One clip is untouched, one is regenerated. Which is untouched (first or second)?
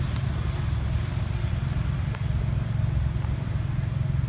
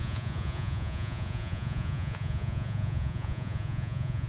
first